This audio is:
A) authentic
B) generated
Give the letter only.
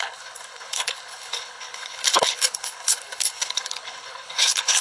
B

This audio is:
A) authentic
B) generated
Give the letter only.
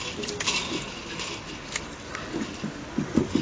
A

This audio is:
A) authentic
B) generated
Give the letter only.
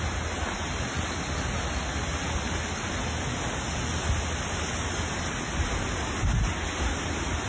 A